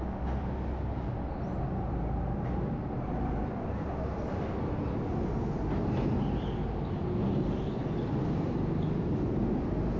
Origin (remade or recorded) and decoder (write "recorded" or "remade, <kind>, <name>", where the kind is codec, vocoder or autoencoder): recorded